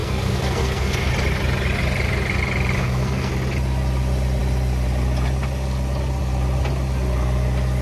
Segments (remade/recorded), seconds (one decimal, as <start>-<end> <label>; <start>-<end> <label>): 0.0-1.1 remade; 1.1-2.8 recorded; 2.8-3.3 remade; 3.3-7.8 recorded